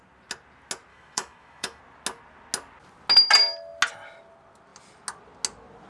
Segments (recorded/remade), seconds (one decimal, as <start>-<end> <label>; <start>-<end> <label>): 0.0-0.9 recorded; 0.9-1.8 remade; 1.8-5.9 recorded